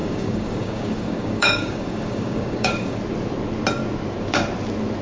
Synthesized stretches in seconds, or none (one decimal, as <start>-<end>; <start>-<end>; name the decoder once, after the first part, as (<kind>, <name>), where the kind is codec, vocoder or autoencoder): 0.0-3.0 (codec, DAC)

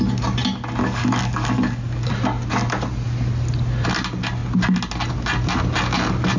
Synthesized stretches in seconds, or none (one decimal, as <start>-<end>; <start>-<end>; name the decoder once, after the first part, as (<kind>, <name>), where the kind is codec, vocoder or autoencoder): 0.8-2.1 (codec, DAC)

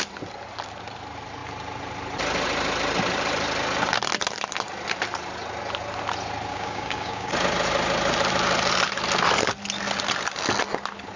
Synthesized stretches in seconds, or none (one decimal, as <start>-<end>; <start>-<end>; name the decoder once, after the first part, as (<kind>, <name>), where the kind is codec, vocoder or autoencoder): 6.5-7.3 (codec, DAC)

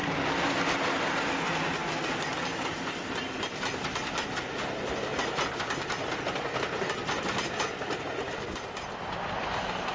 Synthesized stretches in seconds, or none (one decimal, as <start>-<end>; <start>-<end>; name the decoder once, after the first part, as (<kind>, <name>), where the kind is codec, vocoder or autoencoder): none